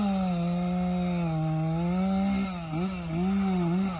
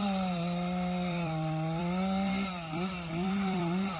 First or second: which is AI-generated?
second